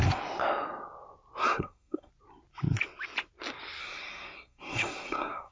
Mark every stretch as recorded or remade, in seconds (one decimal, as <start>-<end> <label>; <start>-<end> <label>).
0.0-1.4 recorded; 1.4-2.1 remade; 2.1-3.8 recorded; 3.8-5.5 remade